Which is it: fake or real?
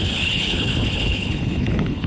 fake